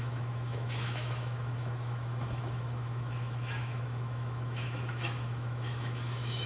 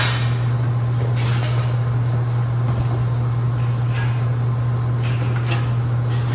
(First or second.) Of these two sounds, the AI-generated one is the first